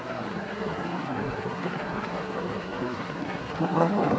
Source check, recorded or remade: remade